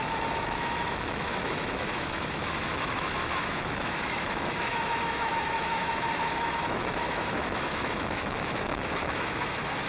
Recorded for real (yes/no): no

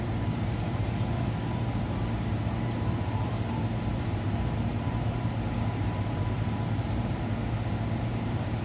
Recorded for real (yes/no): no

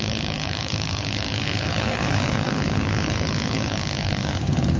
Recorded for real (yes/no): no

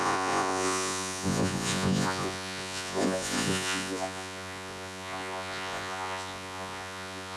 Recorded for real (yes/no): no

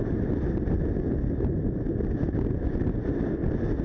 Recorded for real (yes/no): yes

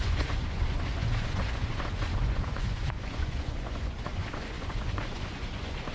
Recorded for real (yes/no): no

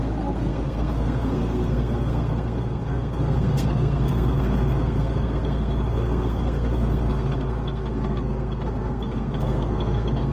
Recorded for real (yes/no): no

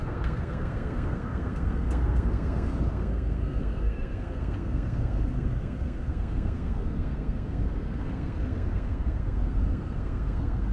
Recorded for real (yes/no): no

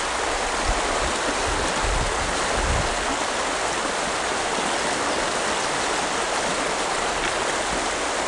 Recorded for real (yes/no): yes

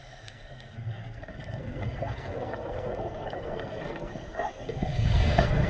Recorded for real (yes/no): no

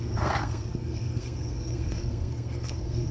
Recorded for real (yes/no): no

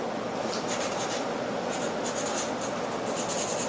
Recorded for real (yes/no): yes